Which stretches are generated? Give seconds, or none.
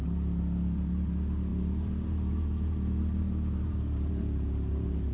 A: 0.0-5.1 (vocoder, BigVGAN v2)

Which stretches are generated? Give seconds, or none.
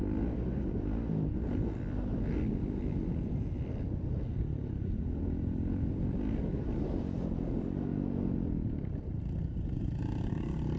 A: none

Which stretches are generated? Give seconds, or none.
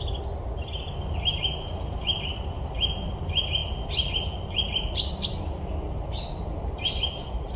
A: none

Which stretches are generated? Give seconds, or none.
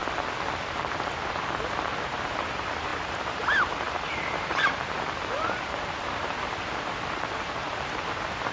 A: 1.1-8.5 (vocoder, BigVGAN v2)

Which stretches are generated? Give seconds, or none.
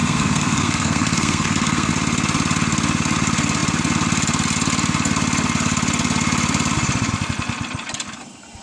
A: 0.0-1.9 (codec, SNAC)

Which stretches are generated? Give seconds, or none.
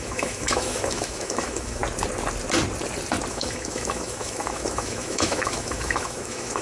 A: 0.0-1.8 (autoencoder, DAC-VAE); 3.3-6.6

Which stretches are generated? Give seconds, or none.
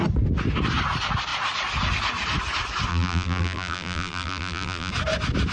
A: 2.9-4.9 (vocoder, BigVGAN v2)